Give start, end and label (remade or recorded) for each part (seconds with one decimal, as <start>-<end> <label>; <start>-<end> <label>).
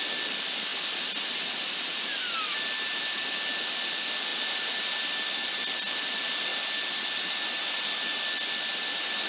0.0-9.3 recorded